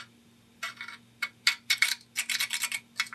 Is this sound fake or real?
real